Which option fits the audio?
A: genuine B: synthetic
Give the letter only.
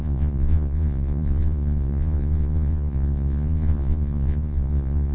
B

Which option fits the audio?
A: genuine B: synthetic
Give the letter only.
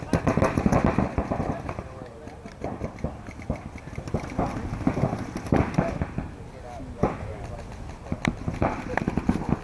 A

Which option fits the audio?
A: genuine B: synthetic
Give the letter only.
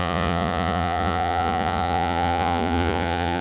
B